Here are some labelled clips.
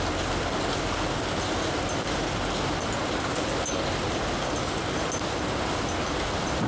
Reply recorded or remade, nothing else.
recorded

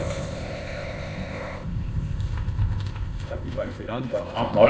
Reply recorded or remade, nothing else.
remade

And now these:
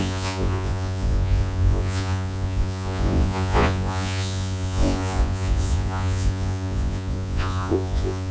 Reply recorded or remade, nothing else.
remade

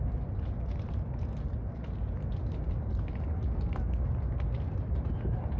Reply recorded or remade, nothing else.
recorded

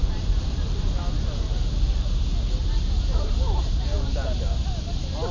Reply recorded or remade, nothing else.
recorded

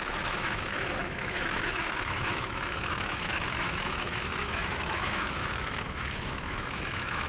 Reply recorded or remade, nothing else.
remade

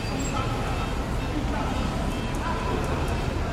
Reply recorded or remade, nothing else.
recorded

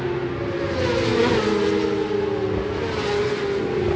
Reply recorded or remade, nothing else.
recorded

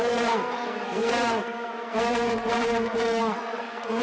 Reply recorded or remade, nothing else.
remade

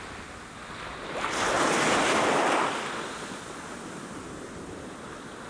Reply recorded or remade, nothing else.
recorded